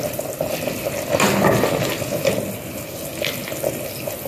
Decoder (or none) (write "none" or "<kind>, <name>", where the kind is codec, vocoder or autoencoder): none